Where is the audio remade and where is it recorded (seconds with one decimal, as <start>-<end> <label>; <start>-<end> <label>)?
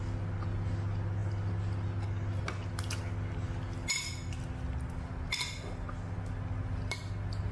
0.0-7.5 recorded